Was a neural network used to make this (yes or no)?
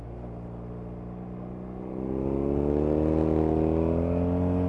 no